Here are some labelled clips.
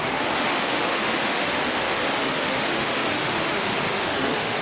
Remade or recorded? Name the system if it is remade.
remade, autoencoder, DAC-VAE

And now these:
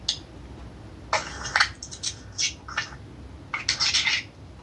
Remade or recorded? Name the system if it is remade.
recorded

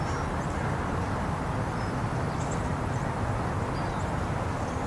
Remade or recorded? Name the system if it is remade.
recorded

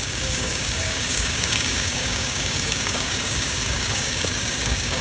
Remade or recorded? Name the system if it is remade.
remade, codec, DAC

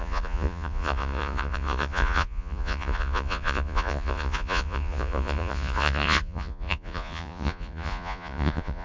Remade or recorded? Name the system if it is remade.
remade, vocoder, Vocos